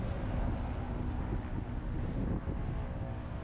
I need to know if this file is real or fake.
real